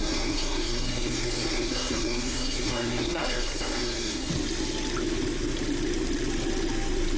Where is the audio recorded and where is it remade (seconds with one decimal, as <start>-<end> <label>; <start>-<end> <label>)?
0.0-4.3 remade; 4.3-7.2 recorded